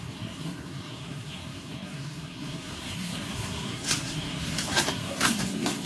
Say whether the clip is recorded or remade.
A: remade